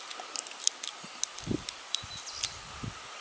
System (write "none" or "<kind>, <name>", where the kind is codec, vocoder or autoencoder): none